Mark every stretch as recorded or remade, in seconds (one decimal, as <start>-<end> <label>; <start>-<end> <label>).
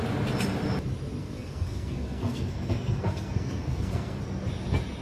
0.0-1.2 recorded; 1.2-4.2 remade; 4.2-5.0 recorded